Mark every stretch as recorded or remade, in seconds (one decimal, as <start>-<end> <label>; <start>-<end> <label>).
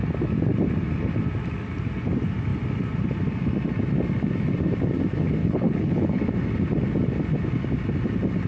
0.0-5.4 recorded; 5.4-6.2 remade; 6.2-8.5 recorded